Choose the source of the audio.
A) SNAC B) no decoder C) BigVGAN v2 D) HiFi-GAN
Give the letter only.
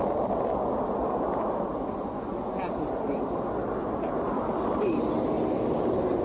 B